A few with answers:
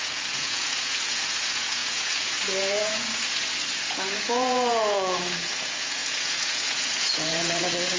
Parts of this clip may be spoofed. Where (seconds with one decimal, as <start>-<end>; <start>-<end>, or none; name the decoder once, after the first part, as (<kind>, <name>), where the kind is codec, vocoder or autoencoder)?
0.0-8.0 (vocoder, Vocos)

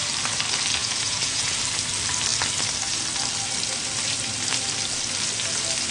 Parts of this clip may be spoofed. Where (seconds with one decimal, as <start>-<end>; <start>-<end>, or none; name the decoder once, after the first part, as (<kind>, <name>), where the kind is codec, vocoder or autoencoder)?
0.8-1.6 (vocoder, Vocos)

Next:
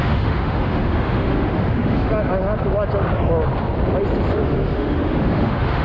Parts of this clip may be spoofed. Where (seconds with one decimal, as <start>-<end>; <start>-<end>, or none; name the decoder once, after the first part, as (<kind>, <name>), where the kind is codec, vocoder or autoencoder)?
0.0-2.1 (autoencoder, DAC-VAE); 4.3-5.8